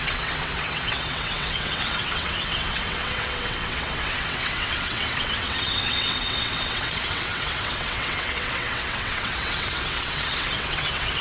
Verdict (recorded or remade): remade